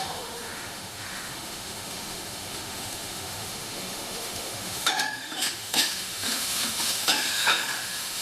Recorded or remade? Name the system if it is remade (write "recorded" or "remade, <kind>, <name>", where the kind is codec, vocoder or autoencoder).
remade, autoencoder, DAC-VAE